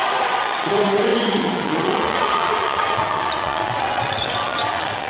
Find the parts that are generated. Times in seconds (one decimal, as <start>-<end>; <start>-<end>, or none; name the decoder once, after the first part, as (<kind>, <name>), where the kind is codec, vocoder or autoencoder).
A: 0.0-5.1 (vocoder, WaveNeXt)

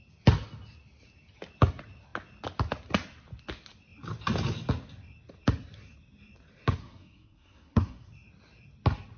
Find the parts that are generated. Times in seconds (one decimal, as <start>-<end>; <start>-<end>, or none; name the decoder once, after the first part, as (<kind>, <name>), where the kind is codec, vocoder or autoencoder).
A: 6.8-8.1 (codec, SNAC)

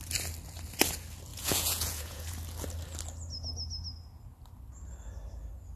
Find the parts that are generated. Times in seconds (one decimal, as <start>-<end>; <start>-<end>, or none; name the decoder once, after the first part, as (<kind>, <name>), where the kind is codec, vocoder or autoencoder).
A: 1.3-2.3 (vocoder, Vocos)

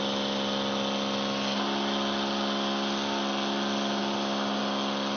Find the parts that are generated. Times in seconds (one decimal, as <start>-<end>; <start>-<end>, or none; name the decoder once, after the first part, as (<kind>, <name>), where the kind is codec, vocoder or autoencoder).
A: none